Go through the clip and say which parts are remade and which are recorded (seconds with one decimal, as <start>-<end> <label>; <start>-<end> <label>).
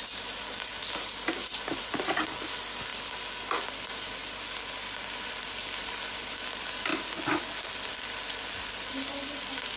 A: 0.0-1.4 recorded; 1.4-2.0 remade; 2.0-9.8 recorded